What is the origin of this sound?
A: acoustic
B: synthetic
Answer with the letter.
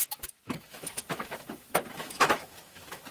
B